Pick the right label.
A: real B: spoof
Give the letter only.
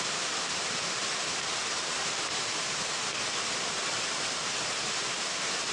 B